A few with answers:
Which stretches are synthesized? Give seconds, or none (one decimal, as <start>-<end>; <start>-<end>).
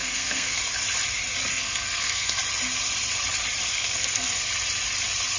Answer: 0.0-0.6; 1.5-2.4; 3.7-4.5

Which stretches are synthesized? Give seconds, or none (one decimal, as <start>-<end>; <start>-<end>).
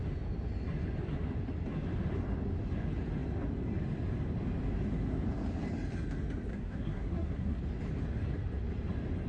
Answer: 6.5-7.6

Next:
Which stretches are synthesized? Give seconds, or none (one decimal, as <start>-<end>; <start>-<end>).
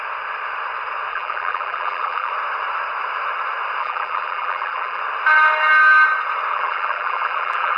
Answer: 1.1-2.3; 3.8-5.0; 6.5-7.8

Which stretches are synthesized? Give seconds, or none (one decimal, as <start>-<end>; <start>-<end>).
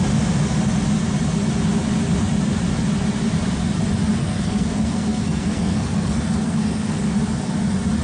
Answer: 4.2-7.2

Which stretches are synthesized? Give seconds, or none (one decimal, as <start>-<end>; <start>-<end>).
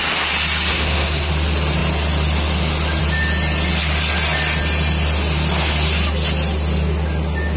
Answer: 0.7-1.3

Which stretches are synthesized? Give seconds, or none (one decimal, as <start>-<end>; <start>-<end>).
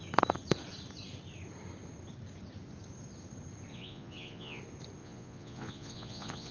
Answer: 3.7-4.6; 5.0-6.5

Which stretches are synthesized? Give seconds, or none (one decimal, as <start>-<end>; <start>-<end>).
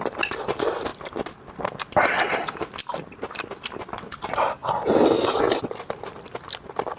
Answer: 2.8-3.5